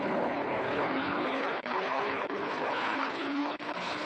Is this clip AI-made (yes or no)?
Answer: yes